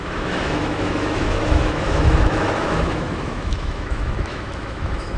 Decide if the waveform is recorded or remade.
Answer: remade